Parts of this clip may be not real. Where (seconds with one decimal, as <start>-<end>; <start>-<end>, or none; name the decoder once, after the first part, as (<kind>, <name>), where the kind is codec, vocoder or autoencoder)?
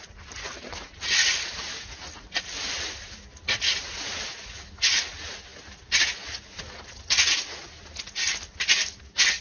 none